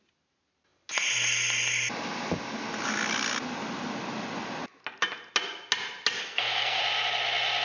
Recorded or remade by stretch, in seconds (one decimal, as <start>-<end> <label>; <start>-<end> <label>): 0.0-6.2 recorded; 6.2-6.8 remade; 6.8-7.6 recorded